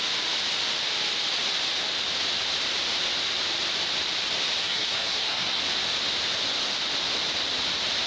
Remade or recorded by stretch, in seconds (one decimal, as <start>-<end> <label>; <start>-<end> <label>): 0.0-4.6 recorded; 4.6-5.6 remade; 5.6-8.1 recorded